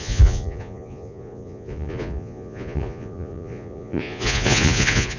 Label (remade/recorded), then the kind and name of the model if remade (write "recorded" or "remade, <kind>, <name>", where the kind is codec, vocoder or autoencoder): remade, vocoder, Vocos